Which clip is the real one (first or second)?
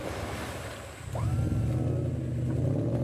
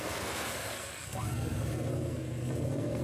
first